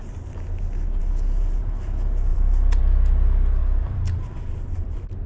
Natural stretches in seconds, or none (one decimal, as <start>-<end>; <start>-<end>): 0.0-2.3; 2.8-3.6; 4.4-5.3